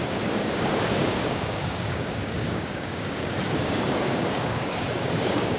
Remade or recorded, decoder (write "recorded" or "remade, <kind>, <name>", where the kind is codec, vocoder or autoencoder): remade, codec, DAC